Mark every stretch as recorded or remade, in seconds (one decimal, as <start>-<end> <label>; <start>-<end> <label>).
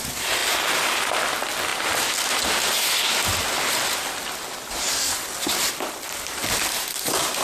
0.0-7.4 recorded